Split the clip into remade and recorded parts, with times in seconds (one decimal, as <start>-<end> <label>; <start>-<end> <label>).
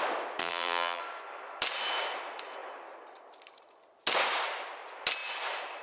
0.0-0.4 recorded; 0.4-1.0 remade; 1.0-5.8 recorded